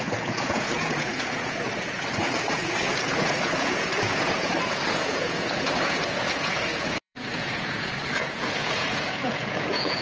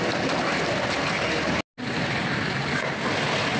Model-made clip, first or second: first